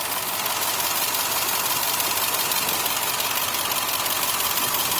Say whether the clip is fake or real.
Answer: real